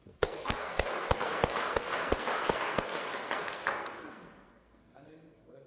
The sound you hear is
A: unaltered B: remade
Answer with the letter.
B